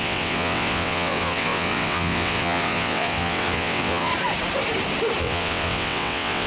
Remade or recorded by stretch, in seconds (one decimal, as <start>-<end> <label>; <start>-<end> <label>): 0.0-4.1 remade; 4.1-5.2 recorded; 5.2-6.5 remade